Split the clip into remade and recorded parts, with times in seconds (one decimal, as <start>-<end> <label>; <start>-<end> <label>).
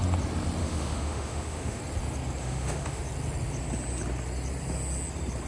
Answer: 0.0-0.6 recorded; 0.6-1.8 remade; 1.8-2.4 recorded; 2.4-3.0 remade; 3.0-5.5 recorded